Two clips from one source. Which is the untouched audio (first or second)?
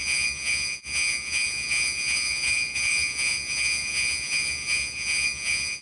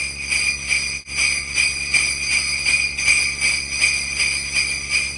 second